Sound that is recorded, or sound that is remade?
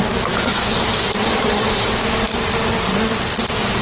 recorded